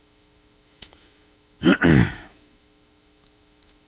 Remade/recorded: remade